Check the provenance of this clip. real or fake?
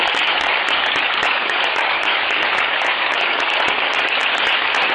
fake